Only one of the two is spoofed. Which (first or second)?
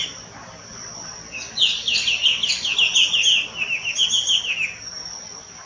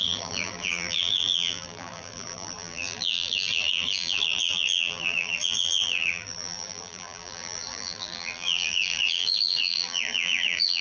second